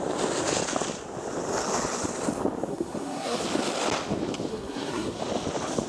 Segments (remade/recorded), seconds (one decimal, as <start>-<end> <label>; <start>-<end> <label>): 0.0-2.7 recorded; 2.7-3.4 remade; 3.4-4.5 recorded; 4.5-5.2 remade; 5.2-5.9 recorded